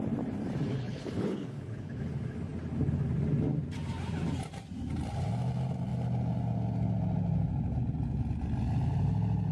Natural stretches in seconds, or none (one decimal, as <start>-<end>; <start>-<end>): 0.0-0.7; 2.0-9.5